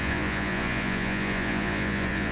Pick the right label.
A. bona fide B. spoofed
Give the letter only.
B